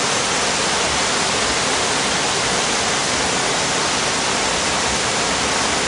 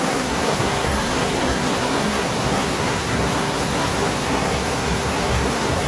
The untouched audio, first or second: first